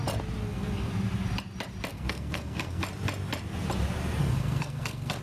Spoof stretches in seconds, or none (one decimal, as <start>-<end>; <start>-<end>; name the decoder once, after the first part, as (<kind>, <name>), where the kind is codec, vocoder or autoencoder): 0.4-0.9 (codec, SNAC); 1.9-2.8; 4.2-5.2